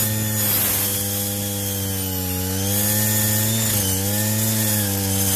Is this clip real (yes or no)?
yes